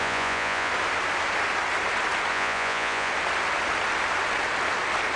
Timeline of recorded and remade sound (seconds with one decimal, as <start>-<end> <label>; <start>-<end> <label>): 0.0-0.7 remade; 0.7-2.3 recorded; 2.3-3.1 remade; 3.1-5.2 recorded